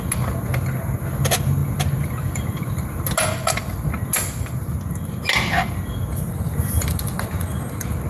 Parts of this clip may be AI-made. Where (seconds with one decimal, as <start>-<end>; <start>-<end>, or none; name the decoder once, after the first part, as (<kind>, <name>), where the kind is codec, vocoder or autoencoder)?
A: none